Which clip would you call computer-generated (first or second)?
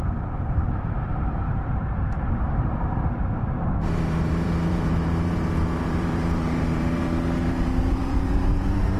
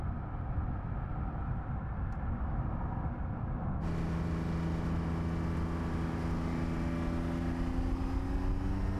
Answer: first